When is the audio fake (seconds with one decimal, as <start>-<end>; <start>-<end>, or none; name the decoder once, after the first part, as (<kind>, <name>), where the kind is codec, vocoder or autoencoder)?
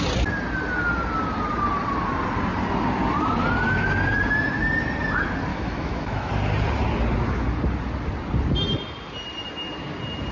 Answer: 5.5-6.3 (autoencoder, DAC-VAE)